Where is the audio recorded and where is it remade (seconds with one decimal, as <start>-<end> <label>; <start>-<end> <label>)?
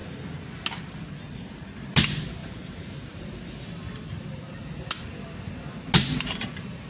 0.0-2.4 recorded; 2.4-3.7 remade; 3.7-6.0 recorded; 6.0-6.9 remade